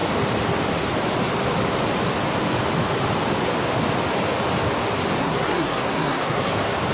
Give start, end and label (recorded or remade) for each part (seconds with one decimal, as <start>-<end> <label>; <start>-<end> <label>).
0.0-5.2 recorded; 5.2-6.5 remade; 6.5-6.9 recorded